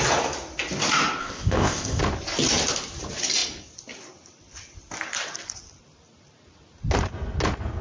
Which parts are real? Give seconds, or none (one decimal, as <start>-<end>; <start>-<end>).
0.0-1.2; 2.0-7.8